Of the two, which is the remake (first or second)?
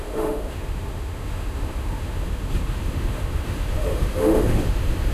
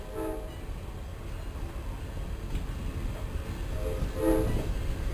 first